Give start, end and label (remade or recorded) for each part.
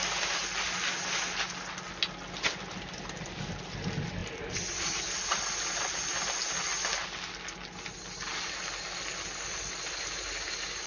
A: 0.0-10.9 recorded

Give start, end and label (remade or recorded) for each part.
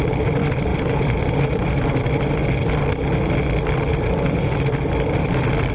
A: 0.0-0.7 recorded; 0.7-1.8 remade; 1.8-3.9 recorded; 3.9-4.6 remade; 4.6-5.7 recorded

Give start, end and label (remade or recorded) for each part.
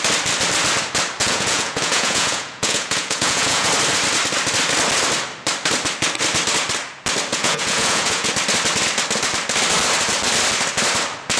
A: 0.0-1.2 recorded; 1.2-3.7 remade; 3.7-7.3 recorded; 7.3-8.3 remade; 8.3-11.4 recorded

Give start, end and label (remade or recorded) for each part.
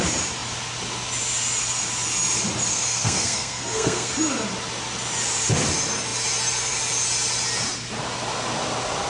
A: 0.0-2.7 recorded; 2.7-4.1 remade; 4.1-9.1 recorded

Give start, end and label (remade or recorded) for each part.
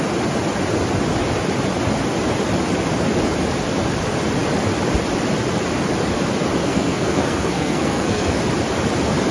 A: 0.0-6.6 recorded; 6.6-8.4 remade; 8.4-9.3 recorded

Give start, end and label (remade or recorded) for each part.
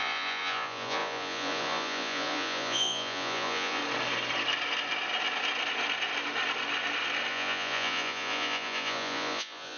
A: 0.0-3.8 remade; 3.8-7.3 recorded; 7.3-9.8 remade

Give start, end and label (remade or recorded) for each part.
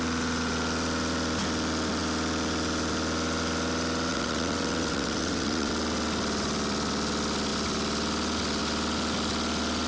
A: 0.0-4.1 recorded; 4.1-5.7 remade; 5.7-9.9 recorded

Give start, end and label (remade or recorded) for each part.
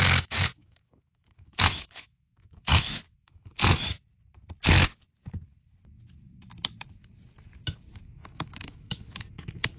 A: 0.0-3.6 remade; 3.6-8.0 recorded; 8.0-9.8 remade